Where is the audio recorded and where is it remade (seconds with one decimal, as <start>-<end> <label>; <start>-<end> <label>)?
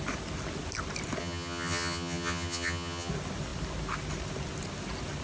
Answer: 0.0-1.2 recorded; 1.2-3.1 remade; 3.1-5.2 recorded